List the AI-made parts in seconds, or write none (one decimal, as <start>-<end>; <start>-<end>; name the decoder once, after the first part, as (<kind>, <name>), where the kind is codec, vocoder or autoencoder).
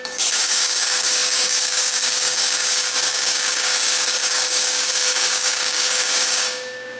0.0-7.0 (codec, DAC)